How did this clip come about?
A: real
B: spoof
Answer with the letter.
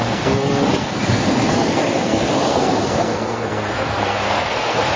B